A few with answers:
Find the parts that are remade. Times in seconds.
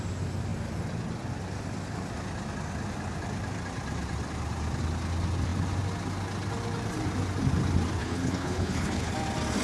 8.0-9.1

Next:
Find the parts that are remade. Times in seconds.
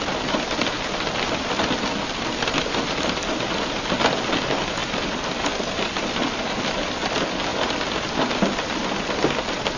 none